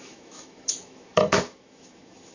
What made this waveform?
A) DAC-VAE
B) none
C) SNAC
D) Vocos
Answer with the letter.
A